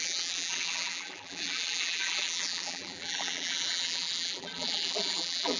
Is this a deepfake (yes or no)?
yes